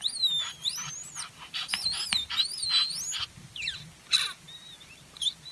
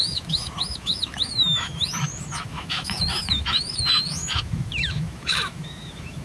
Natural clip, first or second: first